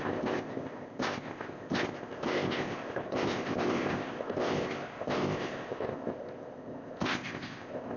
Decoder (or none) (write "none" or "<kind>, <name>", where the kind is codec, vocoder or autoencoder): codec, ZipCodec